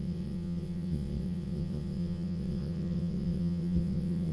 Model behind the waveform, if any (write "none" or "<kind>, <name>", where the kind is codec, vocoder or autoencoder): vocoder, WaveNeXt